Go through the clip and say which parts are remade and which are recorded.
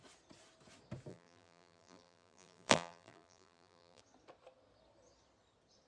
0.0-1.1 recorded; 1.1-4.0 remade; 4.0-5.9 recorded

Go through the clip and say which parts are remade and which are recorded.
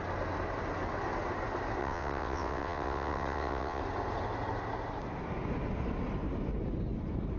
0.0-1.8 recorded; 1.8-3.8 remade; 3.8-7.4 recorded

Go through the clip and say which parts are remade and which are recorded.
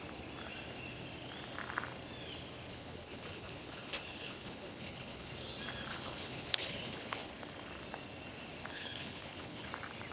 0.0-2.7 recorded; 2.7-5.3 remade; 5.3-5.9 recorded; 5.9-7.3 remade; 7.3-8.6 recorded; 8.6-9.7 remade; 9.7-10.1 recorded